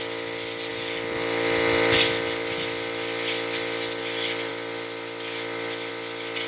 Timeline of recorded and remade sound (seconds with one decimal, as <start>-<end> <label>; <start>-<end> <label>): 0.0-6.5 recorded